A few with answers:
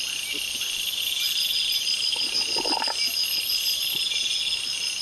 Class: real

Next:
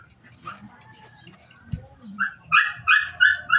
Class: real